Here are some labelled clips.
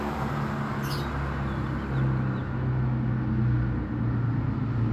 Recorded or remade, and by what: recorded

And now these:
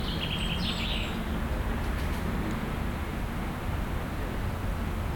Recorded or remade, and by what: recorded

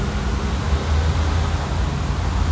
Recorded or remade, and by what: recorded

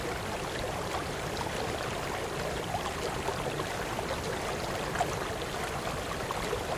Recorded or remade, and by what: recorded